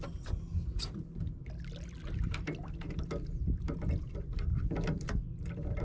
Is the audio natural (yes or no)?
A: yes